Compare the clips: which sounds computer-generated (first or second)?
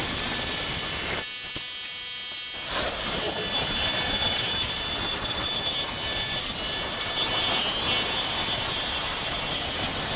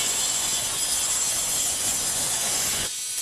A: second